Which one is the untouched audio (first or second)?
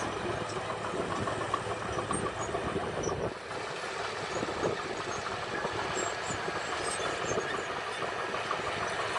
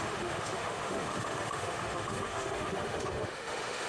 first